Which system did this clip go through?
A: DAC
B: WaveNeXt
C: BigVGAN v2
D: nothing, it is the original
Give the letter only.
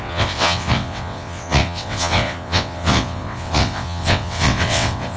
B